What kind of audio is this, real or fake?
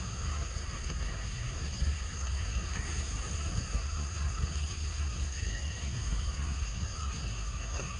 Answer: fake